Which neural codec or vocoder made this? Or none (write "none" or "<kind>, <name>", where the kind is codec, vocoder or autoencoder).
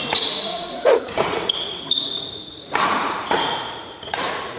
vocoder, Vocos